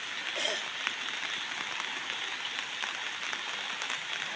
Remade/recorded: recorded